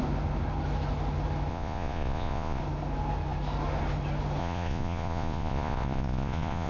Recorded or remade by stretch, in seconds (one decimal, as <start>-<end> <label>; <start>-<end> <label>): 0.0-1.5 recorded; 1.5-2.6 remade; 2.6-4.4 recorded; 4.4-6.7 remade